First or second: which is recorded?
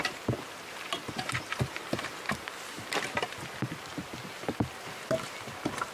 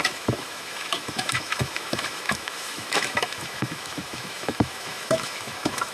first